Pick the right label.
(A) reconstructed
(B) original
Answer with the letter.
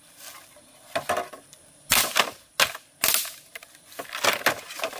B